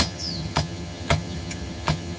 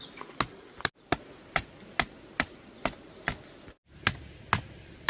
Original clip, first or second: second